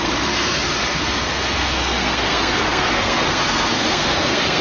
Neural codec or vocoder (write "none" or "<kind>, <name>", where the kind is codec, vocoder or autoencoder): codec, SNAC